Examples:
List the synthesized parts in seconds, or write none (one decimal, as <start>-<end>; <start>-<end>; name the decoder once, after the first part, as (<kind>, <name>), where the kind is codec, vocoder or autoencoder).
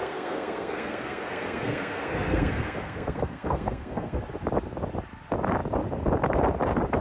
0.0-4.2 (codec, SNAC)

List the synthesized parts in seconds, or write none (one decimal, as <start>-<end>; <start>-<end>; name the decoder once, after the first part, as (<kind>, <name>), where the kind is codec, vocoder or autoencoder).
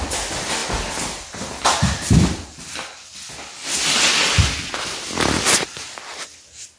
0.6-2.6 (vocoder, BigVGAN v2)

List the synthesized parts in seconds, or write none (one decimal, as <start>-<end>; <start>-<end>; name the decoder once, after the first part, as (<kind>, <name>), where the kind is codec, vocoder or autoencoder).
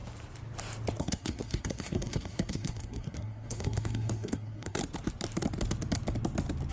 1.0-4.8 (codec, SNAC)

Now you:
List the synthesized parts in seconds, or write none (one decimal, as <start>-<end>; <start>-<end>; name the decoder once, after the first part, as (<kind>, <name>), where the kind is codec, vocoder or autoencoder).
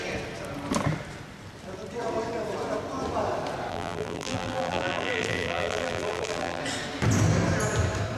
3.7-6.6 (vocoder, BigVGAN v2)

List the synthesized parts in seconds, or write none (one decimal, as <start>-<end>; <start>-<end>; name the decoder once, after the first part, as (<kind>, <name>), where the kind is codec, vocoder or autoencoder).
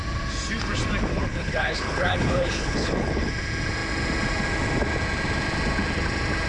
1.1-3.3 (codec, HILCodec)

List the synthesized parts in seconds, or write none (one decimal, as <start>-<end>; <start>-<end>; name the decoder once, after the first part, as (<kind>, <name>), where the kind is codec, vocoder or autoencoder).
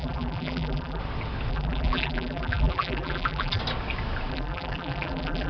0.0-1.0 (vocoder, BigVGAN v2); 1.5-3.6; 4.3-5.5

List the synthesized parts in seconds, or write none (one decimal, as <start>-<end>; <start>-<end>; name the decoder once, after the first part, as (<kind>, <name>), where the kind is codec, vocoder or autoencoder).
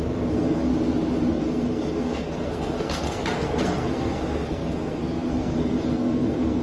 0.0-0.7 (codec, SNAC); 1.3-6.6